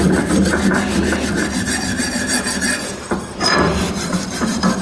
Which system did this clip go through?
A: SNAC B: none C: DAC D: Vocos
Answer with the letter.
B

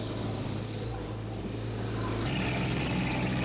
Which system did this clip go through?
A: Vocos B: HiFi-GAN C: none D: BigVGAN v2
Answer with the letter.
C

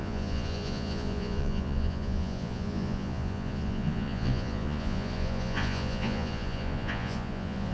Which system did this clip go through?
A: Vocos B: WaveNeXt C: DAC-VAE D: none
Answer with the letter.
A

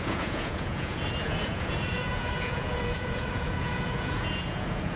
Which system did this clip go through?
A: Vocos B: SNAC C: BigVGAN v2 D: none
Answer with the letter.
A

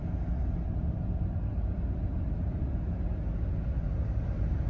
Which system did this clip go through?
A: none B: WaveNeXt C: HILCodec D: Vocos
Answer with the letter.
A